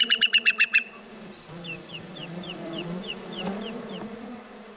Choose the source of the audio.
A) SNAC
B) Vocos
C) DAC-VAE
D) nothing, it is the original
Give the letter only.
B